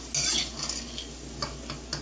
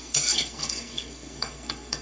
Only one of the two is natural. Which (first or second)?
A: first